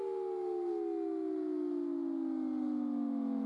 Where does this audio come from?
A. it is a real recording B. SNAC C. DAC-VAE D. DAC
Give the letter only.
A